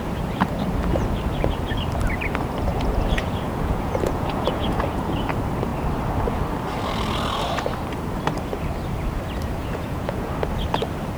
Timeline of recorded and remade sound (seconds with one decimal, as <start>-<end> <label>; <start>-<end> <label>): 0.0-2.7 recorded; 2.7-5.3 remade; 5.3-9.6 recorded; 9.6-10.3 remade; 10.3-11.2 recorded